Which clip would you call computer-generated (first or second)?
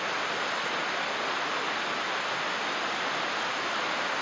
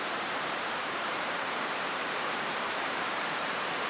second